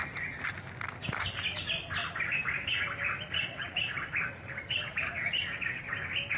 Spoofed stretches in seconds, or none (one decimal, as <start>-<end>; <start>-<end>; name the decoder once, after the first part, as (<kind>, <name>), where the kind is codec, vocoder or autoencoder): 2.0-5.8 (vocoder, BigVGAN v2)